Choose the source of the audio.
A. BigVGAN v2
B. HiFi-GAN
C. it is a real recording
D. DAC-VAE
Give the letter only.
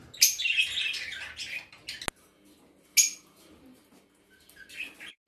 C